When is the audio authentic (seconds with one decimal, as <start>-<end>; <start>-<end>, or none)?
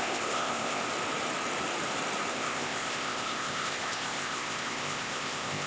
0.8-2.3